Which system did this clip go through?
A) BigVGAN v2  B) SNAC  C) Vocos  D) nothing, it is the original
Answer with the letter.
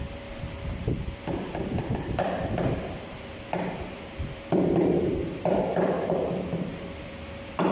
A